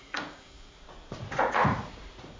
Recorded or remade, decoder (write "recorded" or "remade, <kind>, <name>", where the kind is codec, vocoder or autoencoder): remade, vocoder, Vocos